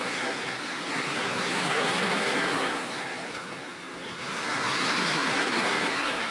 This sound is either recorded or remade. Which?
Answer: remade